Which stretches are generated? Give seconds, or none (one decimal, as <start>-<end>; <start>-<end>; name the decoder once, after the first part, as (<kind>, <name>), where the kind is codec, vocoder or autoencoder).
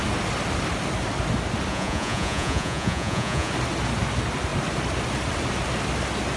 1.7-3.5 (vocoder, Vocos)